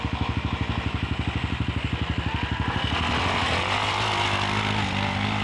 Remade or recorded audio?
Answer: recorded